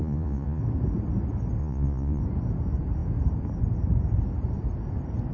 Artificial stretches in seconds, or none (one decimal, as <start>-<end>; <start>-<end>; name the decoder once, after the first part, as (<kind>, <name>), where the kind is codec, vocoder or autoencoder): 0.0-0.6 (vocoder, Vocos); 1.6-2.2